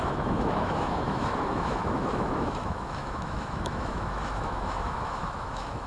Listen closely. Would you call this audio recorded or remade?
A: remade